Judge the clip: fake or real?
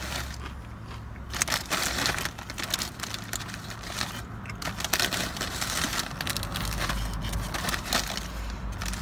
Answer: real